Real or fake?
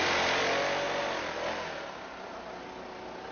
real